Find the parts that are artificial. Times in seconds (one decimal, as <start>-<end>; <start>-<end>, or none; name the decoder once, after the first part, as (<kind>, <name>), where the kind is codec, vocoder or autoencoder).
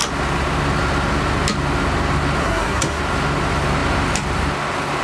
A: 2.4-3.0 (codec, SNAC)